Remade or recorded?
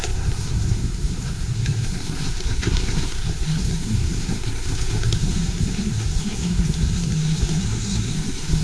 remade